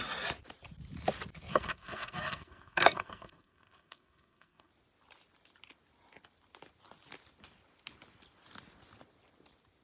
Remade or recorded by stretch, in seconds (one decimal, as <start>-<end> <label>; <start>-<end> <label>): 0.0-1.5 recorded; 1.5-4.7 remade; 4.7-9.8 recorded